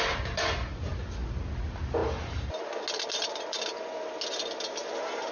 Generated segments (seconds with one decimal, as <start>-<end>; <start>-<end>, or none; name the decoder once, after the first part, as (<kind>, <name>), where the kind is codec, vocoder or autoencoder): none